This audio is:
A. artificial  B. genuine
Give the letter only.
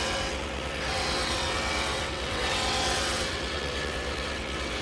A